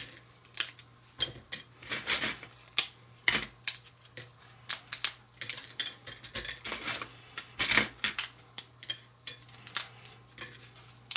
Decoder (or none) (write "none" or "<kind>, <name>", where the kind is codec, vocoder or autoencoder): none